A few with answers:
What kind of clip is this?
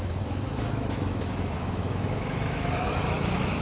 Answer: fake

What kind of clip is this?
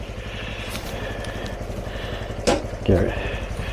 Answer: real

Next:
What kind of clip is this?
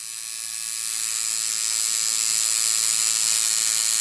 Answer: real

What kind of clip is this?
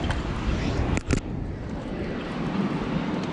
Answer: real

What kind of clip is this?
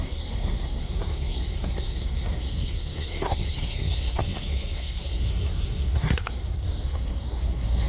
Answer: fake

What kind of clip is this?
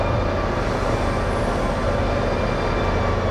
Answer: real